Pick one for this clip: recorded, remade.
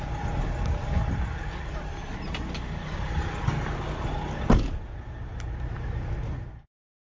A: recorded